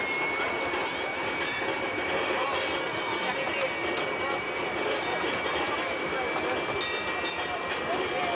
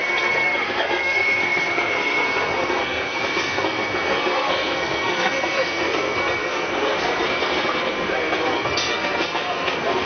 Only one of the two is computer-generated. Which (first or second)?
second